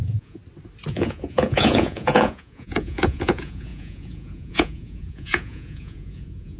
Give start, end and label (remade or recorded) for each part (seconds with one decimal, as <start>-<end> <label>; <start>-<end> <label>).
0.0-0.4 remade; 0.4-0.9 recorded; 0.9-6.6 remade